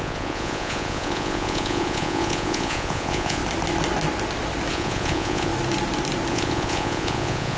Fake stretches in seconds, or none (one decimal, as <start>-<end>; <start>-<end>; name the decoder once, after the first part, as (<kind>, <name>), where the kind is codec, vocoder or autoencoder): 0.0-3.4 (vocoder, Vocos); 4.7-5.5; 6.3-7.6